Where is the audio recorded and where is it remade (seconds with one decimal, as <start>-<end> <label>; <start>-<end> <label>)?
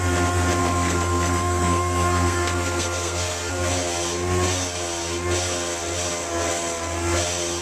0.0-0.6 recorded; 0.6-3.5 remade; 3.5-7.6 recorded